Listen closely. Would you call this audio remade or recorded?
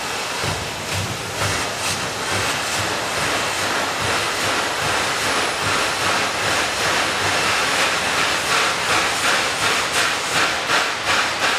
recorded